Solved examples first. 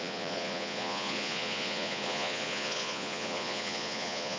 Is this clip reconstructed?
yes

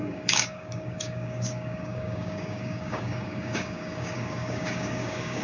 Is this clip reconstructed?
yes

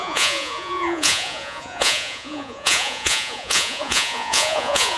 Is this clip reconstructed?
yes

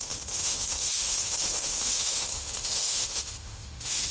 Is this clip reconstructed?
yes